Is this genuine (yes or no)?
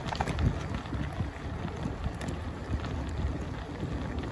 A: yes